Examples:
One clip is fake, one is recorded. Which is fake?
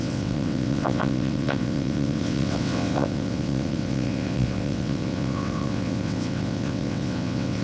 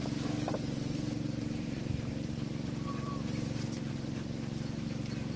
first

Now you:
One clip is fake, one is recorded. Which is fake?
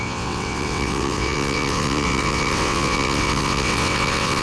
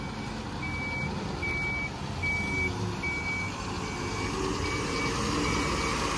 first